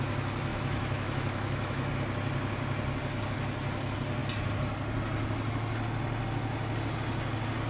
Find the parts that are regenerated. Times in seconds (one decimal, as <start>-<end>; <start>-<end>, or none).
0.5-1.9